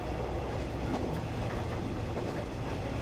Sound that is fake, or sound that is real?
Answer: real